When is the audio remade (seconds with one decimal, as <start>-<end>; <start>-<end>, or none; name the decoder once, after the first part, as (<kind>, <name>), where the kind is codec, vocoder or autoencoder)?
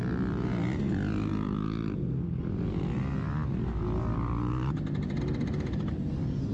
none